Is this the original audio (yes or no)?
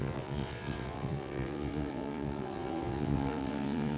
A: no